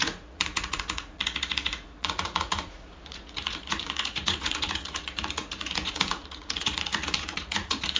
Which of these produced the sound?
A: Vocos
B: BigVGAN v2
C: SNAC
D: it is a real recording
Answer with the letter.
A